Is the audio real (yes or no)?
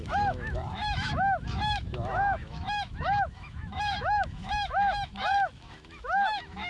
no